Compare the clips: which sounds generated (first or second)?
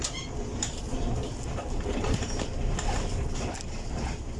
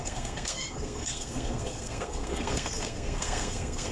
second